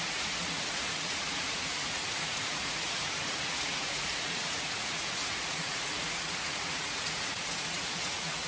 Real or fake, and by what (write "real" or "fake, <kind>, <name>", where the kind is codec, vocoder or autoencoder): fake, vocoder, Vocos